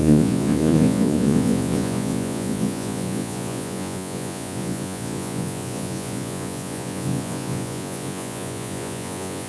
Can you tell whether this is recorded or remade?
remade